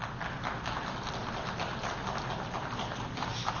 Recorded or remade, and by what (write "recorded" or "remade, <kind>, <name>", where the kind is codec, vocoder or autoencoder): recorded